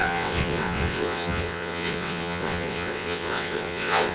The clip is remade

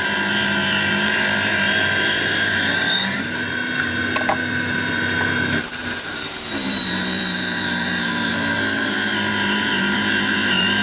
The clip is remade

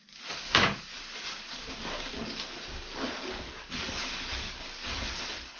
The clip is remade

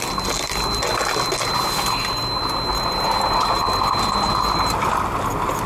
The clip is recorded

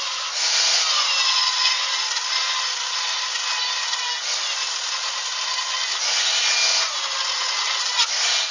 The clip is recorded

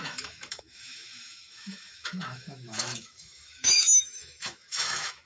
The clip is remade